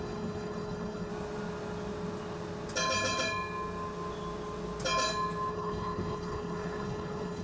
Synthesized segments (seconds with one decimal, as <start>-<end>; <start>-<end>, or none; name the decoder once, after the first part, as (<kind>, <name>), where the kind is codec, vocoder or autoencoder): 0.0-1.1 (codec, HILCodec); 5.5-7.4